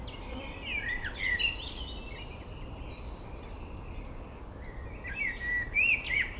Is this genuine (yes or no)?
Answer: yes